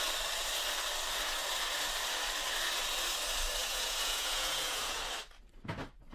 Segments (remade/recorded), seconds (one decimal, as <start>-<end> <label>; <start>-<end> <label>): 0.0-3.6 recorded; 3.6-5.0 remade; 5.0-6.1 recorded